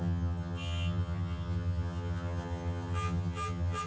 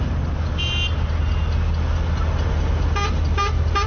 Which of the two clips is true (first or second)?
second